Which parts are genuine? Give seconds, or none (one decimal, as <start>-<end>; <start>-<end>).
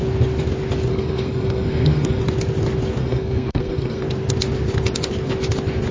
0.0-0.9; 2.2-3.0; 4.0-5.9